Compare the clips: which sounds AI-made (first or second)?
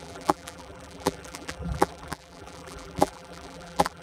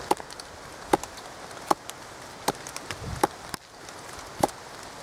first